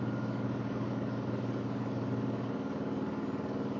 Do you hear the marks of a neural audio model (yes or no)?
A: yes